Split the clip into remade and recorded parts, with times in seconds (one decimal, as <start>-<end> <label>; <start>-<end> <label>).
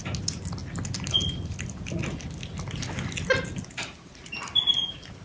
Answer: 0.0-5.2 recorded